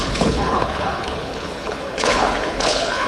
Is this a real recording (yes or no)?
no